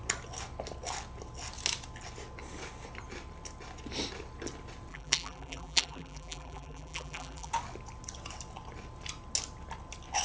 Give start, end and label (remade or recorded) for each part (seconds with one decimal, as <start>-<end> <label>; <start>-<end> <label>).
0.0-4.9 recorded; 4.9-7.5 remade; 7.5-10.2 recorded